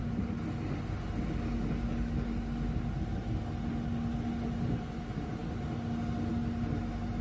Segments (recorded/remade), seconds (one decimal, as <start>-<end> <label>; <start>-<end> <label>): 0.0-7.2 recorded